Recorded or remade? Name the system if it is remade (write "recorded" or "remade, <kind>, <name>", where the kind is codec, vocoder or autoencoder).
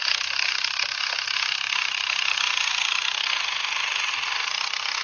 recorded